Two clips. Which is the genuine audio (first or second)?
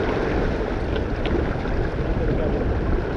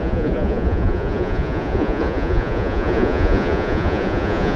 first